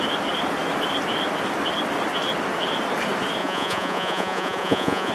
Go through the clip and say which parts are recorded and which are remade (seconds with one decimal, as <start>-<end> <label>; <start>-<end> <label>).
0.0-3.4 recorded; 3.4-5.1 remade